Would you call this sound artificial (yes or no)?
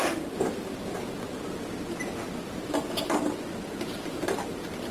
no